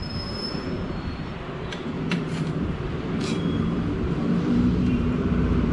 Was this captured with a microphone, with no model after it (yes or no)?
no